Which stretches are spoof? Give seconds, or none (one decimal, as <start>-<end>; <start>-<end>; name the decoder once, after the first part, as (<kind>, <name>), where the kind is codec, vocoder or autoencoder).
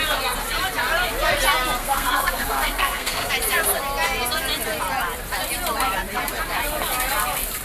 1.8-3.3 (codec, SNAC)